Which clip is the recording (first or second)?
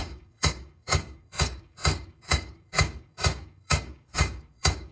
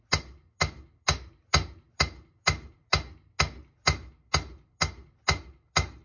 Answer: second